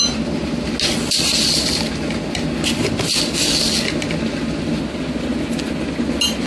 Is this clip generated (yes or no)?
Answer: no